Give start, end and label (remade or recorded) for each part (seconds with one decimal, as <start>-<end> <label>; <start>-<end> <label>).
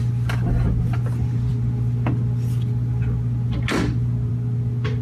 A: 0.0-5.0 recorded